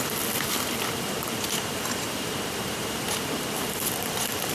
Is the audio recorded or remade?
remade